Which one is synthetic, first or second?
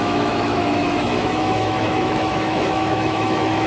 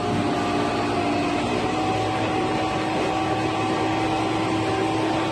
first